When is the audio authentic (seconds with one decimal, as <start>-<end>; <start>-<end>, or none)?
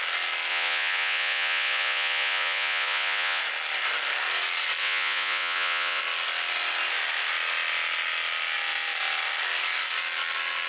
0.0-0.5; 3.4-4.8; 6.0-10.7